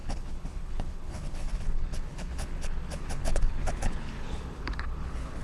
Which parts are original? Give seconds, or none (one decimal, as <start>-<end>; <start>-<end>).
none